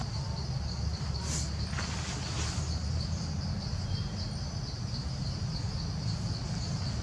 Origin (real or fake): real